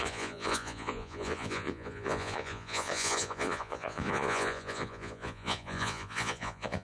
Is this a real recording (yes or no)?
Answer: no